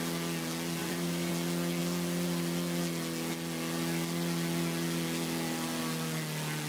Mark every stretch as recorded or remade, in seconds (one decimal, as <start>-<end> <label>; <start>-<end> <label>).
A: 0.0-0.8 recorded; 0.8-1.3 remade; 1.3-6.7 recorded